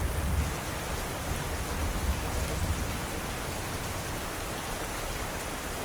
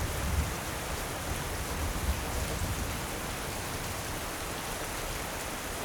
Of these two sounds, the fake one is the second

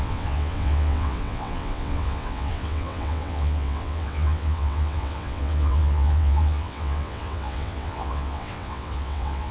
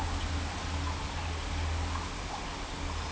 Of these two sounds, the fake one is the first